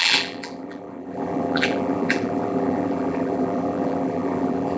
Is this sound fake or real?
fake